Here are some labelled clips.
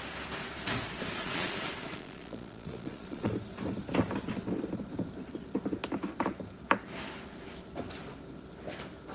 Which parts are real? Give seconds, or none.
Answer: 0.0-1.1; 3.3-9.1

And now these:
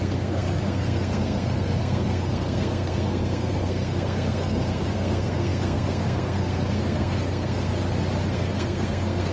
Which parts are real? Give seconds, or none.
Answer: 7.7-8.3

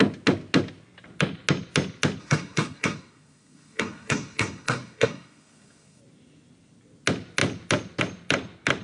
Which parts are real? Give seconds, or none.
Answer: 0.0-2.2; 6.0-8.8

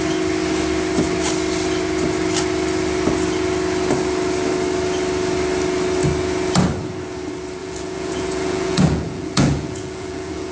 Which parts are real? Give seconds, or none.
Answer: 0.0-7.6